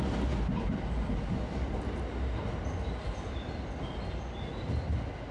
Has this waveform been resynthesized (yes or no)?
no